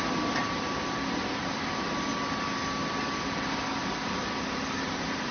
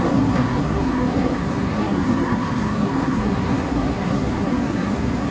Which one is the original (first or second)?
first